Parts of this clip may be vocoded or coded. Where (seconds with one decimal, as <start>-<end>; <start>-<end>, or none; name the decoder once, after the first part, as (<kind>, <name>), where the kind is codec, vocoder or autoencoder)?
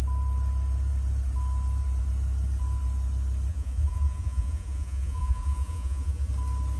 3.5-6.3 (vocoder, Vocos)